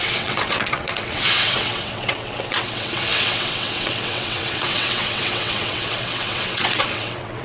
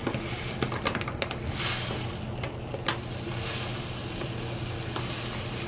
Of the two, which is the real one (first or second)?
second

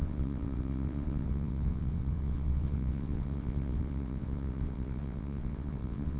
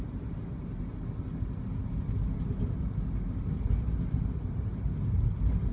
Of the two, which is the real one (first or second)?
second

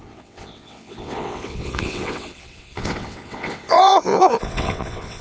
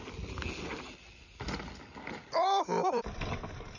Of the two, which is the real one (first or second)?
second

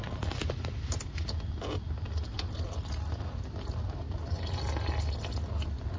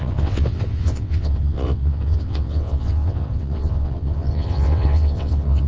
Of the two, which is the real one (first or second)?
first